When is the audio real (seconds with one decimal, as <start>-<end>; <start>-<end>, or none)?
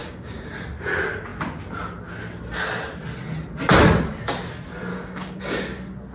0.5-4.9; 5.4-6.1